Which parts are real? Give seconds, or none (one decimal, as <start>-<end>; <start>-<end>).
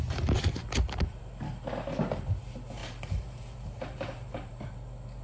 0.0-2.8; 4.6-5.2